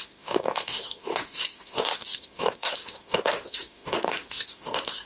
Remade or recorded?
remade